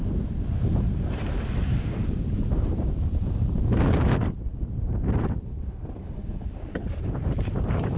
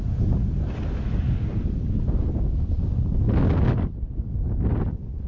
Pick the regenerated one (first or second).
first